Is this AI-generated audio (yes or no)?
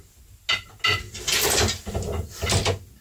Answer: no